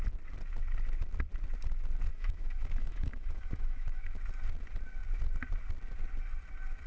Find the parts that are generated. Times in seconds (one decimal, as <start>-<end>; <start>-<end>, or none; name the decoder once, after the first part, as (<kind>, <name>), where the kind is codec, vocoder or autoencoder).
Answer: 2.1-4.2 (autoencoder, DAC-VAE)